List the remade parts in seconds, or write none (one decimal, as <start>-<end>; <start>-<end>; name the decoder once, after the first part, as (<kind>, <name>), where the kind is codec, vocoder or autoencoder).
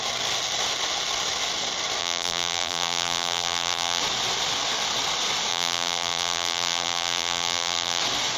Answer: 2.0-4.0 (vocoder, BigVGAN v2); 5.5-8.0